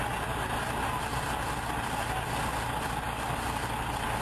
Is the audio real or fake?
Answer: real